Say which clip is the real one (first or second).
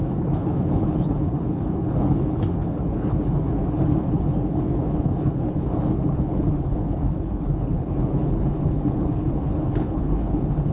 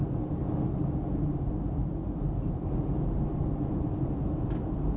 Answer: second